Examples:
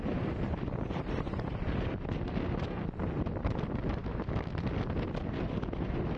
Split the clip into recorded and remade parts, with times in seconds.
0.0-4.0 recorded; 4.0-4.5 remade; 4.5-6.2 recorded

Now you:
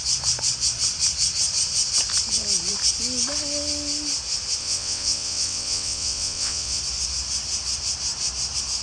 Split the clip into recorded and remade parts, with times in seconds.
0.0-4.6 recorded; 4.6-6.8 remade; 6.8-8.8 recorded

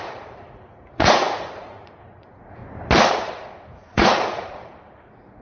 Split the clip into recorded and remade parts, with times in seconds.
0.0-2.6 remade; 2.6-3.1 recorded; 3.1-5.4 remade

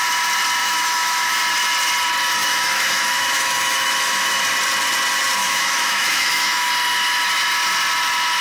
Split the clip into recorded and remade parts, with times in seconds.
0.0-0.6 recorded; 0.6-1.3 remade; 1.3-2.4 recorded; 2.4-4.4 remade; 4.4-5.4 recorded; 5.4-6.7 remade; 6.7-8.4 recorded